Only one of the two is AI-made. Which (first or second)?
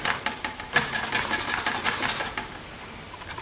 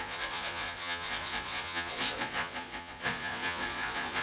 second